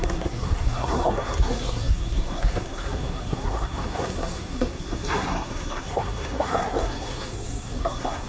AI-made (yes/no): yes